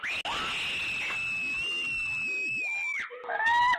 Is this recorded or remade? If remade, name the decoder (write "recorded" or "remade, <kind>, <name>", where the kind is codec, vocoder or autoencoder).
recorded